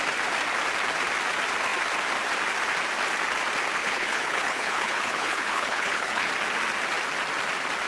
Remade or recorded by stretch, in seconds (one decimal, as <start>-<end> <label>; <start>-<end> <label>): 0.0-3.8 recorded; 3.8-6.3 remade; 6.3-7.9 recorded